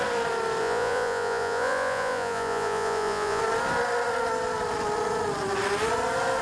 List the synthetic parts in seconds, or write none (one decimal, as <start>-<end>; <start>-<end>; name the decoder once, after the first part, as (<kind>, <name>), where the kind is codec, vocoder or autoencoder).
0.6-3.4 (vocoder, Vocos)